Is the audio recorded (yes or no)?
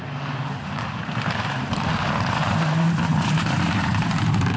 no